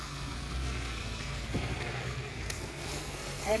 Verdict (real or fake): fake